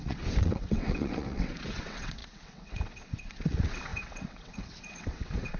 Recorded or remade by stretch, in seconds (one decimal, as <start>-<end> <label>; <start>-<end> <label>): 0.0-5.6 remade